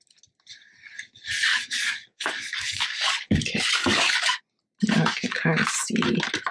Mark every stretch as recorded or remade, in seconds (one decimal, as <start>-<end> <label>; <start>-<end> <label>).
0.0-1.5 recorded; 1.5-3.4 remade; 3.4-3.8 recorded; 3.8-4.4 remade; 4.4-5.2 recorded; 5.2-5.9 remade; 5.9-6.5 recorded